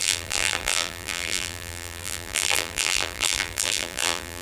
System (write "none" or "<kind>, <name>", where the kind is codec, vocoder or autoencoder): vocoder, BigVGAN v2